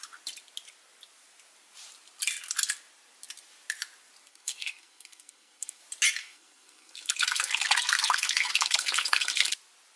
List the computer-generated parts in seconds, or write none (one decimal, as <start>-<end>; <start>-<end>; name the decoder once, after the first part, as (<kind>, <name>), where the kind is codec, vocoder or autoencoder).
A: 4.3-5.8 (codec, SNAC); 6.2-9.5